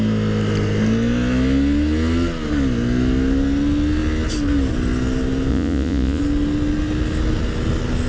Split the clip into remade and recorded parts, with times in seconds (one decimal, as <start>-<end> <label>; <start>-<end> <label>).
0.0-5.5 recorded; 5.5-6.2 remade; 6.2-8.1 recorded